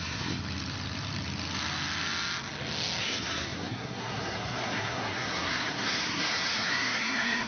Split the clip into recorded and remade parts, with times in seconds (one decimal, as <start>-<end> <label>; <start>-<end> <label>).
0.0-0.4 remade; 0.4-3.0 recorded; 3.0-7.5 remade